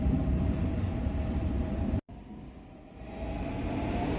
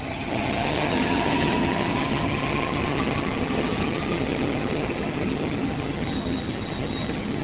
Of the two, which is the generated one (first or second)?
second